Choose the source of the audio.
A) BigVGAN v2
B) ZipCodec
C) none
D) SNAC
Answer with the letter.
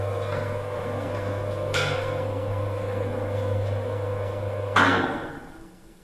D